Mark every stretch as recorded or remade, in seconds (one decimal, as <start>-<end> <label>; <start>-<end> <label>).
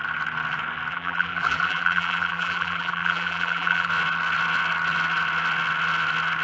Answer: 0.0-0.9 recorded; 0.9-3.9 remade; 3.9-6.4 recorded